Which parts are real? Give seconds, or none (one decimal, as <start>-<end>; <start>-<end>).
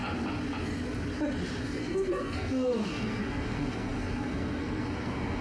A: 0.0-1.6